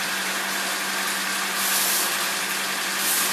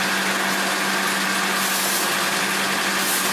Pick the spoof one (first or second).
first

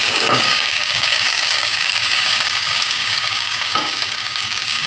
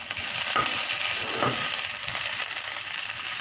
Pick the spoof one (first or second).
first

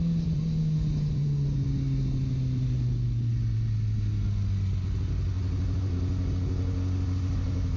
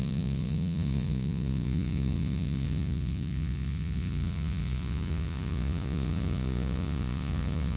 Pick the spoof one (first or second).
second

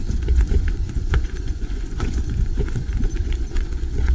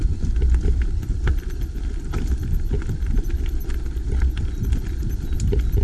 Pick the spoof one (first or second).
first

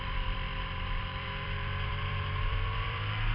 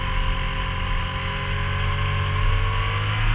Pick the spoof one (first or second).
first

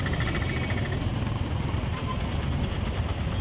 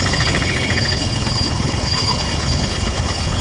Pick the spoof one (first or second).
second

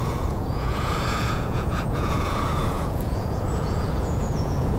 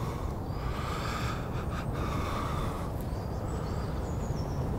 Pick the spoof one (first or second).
first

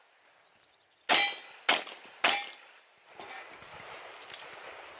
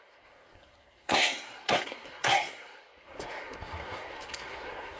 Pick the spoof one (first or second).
second